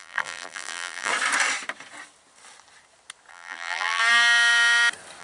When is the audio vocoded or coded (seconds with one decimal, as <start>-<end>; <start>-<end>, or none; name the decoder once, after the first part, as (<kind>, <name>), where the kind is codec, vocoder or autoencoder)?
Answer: 0.0-1.1 (vocoder, BigVGAN v2); 3.3-4.0